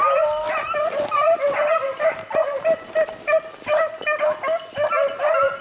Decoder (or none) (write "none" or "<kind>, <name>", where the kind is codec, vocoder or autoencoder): none